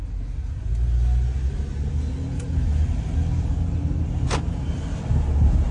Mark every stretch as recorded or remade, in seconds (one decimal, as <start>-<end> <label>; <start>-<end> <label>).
0.0-5.7 recorded